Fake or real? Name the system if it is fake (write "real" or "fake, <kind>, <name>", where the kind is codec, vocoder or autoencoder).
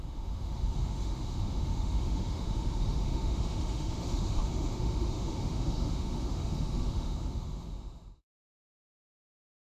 fake, autoencoder, DAC-VAE